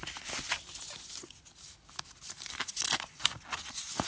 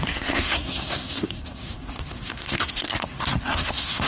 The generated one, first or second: second